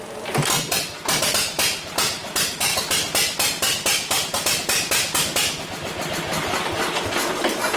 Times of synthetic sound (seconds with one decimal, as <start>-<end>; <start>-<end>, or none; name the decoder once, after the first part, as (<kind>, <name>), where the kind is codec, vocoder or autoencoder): none